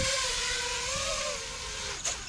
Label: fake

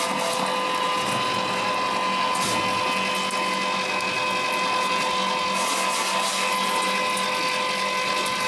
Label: real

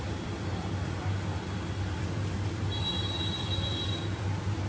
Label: fake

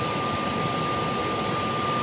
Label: real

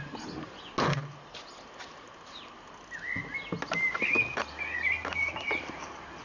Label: real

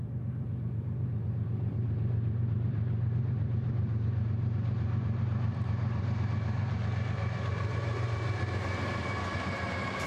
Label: fake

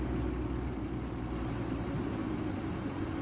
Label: real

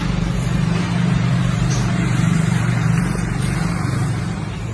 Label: fake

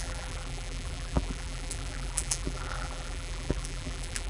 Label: fake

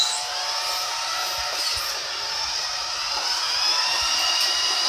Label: real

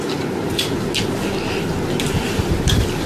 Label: real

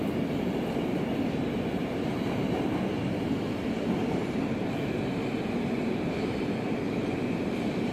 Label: fake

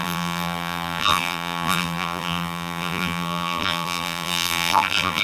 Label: fake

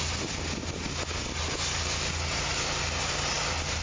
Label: real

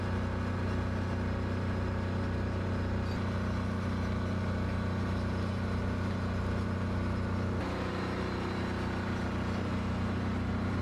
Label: real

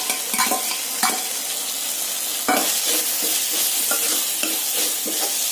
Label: real